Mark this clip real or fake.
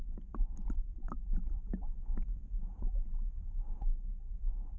real